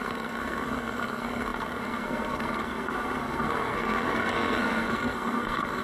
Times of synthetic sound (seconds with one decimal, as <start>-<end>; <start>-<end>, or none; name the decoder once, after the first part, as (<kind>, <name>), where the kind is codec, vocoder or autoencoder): 0.0-5.8 (codec, SNAC)